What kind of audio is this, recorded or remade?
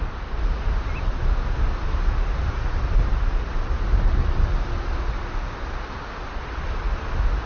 recorded